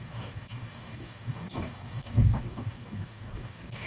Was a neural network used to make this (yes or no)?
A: yes